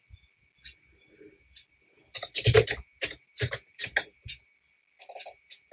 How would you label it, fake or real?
real